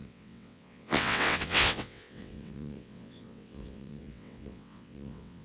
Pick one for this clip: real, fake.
fake